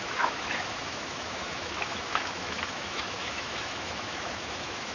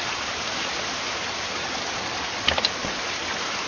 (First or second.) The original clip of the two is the second